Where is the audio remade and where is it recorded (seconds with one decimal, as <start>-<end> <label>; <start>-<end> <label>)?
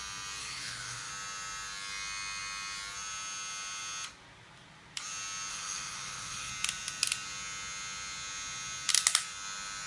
0.0-0.4 recorded; 0.4-1.1 remade; 1.1-5.5 recorded; 5.5-6.5 remade; 6.5-9.9 recorded